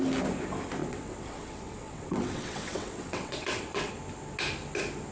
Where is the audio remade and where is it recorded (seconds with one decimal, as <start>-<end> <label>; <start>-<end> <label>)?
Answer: 0.0-0.8 recorded; 0.8-3.9 remade; 3.9-5.1 recorded